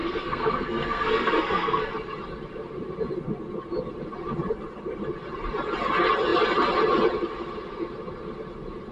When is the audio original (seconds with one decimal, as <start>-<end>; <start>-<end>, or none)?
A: 1.9-8.9